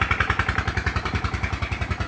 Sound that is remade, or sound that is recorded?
remade